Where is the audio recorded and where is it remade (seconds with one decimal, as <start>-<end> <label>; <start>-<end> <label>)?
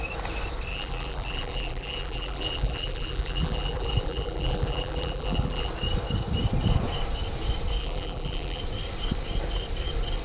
0.0-0.7 recorded; 0.7-5.7 remade; 5.7-7.8 recorded; 7.8-8.6 remade; 8.6-10.2 recorded